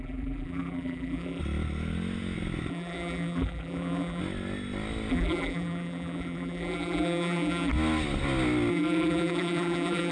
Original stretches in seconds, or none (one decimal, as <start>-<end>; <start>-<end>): 1.4-2.7; 4.2-5.1; 7.7-8.7